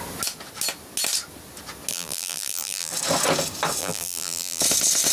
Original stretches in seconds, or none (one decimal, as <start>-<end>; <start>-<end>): 0.0-1.9; 2.9-3.8; 4.6-5.1